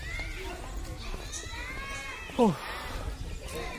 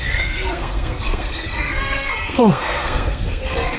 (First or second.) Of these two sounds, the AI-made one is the second